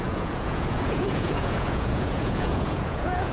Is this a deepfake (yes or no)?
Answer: yes